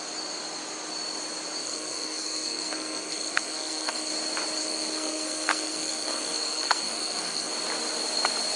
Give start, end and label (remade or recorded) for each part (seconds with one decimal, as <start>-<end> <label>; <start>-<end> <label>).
0.0-1.6 recorded; 1.6-4.1 remade; 4.1-4.6 recorded; 4.6-7.5 remade; 7.5-8.6 recorded